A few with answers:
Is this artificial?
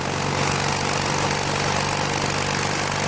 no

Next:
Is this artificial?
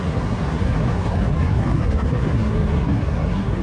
yes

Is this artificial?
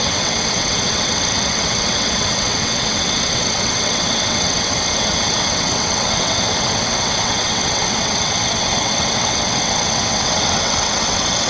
yes